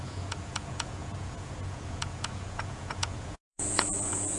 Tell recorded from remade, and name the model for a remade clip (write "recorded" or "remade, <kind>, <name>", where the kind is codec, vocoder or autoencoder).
remade, vocoder, Vocos